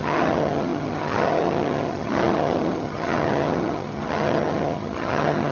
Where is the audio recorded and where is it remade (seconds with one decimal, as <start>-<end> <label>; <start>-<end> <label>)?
0.0-5.5 remade